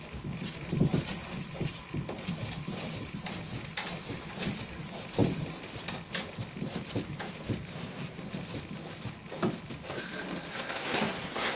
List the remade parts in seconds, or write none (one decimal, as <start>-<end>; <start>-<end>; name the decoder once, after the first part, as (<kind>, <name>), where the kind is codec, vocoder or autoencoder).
7.7-8.2 (codec, SNAC); 10.5-11.6